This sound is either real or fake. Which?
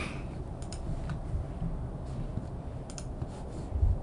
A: real